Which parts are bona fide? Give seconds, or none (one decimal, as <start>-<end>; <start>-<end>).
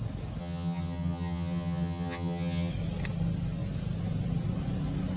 0.0-0.4; 2.7-5.2